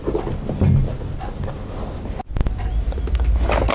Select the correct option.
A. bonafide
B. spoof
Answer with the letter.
A